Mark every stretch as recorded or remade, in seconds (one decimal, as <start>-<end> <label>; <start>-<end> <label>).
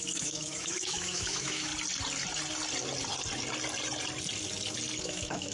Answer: 0.0-1.7 remade; 1.7-5.0 recorded; 5.0-5.5 remade